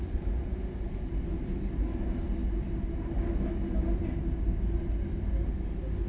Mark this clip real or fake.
real